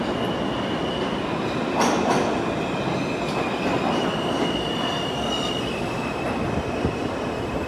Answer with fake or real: real